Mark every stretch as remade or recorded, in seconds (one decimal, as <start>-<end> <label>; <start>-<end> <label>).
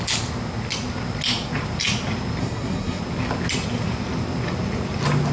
0.0-2.4 recorded; 2.4-3.0 remade; 3.0-5.3 recorded